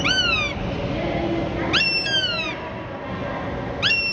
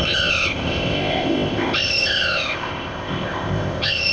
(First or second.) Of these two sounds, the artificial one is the second